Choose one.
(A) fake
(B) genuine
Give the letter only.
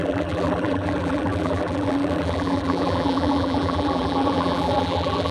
A